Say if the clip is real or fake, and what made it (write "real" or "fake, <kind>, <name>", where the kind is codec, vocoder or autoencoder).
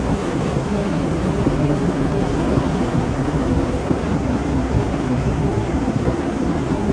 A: fake, codec, SNAC